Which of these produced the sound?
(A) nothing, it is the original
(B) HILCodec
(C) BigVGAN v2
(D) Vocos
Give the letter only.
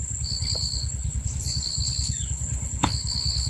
B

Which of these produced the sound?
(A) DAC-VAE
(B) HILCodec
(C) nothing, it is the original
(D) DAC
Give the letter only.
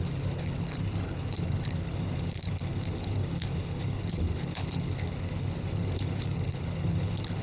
B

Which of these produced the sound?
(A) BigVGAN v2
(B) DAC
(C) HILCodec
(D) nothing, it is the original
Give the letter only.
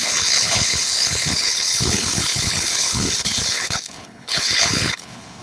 C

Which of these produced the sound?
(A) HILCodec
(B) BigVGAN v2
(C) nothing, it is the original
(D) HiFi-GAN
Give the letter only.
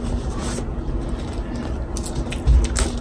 C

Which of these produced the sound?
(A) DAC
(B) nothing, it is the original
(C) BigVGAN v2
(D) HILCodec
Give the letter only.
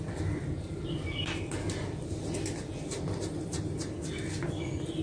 B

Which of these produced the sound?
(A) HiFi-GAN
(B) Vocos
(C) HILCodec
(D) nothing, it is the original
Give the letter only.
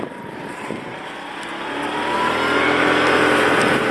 D